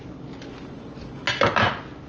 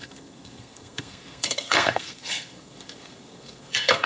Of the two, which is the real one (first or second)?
first